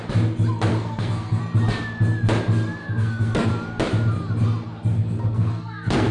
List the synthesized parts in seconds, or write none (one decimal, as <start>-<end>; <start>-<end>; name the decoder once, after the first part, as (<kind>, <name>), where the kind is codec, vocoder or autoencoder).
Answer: 0.7-1.4 (codec, SNAC); 2.8-3.5; 4.9-6.1